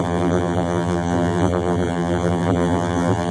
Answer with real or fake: fake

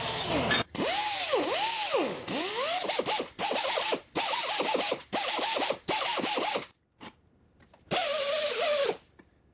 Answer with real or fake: fake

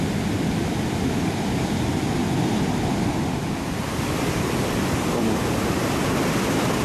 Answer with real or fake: fake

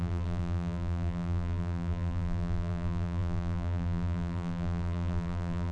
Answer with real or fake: fake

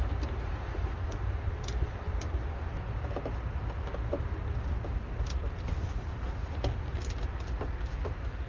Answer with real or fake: real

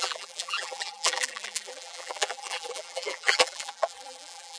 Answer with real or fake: fake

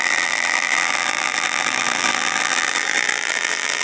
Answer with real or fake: fake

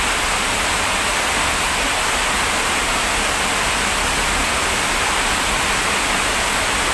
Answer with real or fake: real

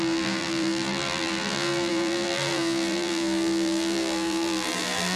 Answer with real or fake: fake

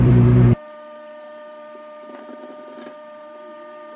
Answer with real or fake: fake